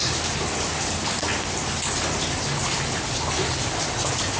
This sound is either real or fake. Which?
real